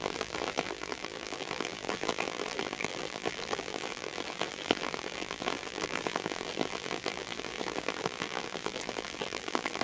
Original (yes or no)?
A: no